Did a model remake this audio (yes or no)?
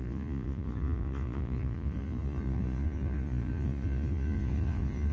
yes